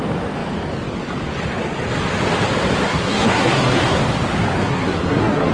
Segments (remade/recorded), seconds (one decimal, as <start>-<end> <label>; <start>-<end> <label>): 0.0-2.9 recorded; 2.9-4.0 remade; 4.0-4.6 recorded; 4.6-5.5 remade